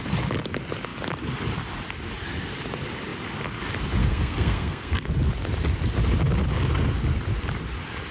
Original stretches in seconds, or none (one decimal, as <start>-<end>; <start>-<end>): 0.0-4.0; 5.1-8.1